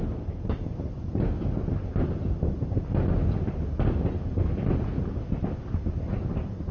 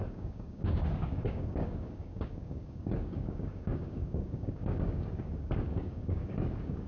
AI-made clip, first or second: second